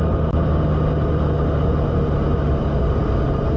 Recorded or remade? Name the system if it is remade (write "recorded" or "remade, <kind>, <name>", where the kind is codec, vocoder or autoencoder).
recorded